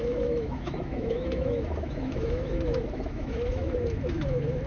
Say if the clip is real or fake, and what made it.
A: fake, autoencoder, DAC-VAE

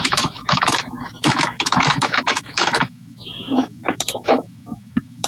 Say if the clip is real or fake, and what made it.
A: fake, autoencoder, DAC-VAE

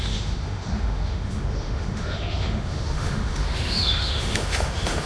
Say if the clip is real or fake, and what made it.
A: fake, autoencoder, DAC-VAE